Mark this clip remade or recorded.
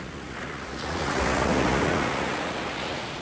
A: remade